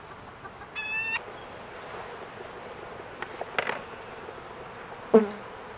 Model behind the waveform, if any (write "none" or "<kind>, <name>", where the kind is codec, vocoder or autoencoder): none